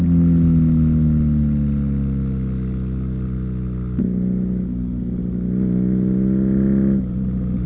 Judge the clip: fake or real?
real